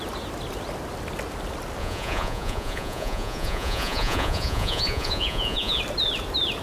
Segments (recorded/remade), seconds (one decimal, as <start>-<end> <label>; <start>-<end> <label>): 0.0-1.8 recorded; 1.8-5.8 remade; 5.8-6.6 recorded